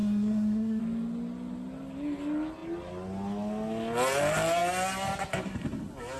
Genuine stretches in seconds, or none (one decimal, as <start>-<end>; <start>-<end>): 0.8-6.2